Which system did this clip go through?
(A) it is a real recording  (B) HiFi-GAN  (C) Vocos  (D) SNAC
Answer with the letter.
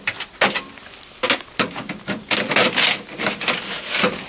A